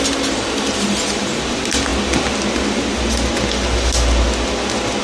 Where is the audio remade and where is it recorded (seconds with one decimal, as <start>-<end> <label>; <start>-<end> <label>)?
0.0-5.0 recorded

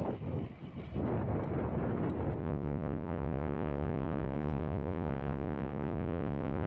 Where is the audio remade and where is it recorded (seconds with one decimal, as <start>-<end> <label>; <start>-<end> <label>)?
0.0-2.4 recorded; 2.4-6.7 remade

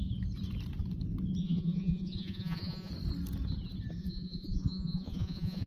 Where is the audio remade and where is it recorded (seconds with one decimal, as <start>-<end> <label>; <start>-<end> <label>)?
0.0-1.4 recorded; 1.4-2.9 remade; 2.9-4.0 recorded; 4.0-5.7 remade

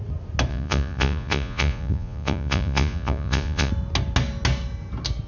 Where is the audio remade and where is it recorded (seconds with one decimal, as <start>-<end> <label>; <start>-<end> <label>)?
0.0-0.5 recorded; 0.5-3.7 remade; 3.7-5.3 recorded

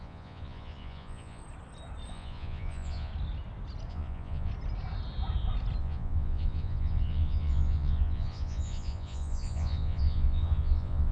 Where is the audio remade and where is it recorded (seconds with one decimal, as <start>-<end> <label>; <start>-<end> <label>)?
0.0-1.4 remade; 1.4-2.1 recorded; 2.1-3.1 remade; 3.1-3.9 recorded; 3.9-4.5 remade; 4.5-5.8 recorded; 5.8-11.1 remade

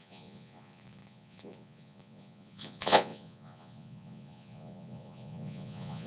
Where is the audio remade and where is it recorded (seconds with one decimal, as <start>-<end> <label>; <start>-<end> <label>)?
0.0-6.1 remade